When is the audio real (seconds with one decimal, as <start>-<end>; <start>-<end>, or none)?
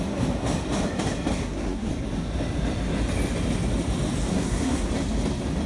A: 0.0-1.3; 1.9-4.3; 4.9-5.7